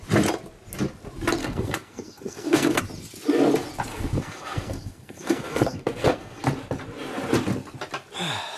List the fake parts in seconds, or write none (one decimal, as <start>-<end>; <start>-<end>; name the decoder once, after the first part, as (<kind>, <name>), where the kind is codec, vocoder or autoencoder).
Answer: 1.4-2.8 (codec, SNAC); 3.9-6.4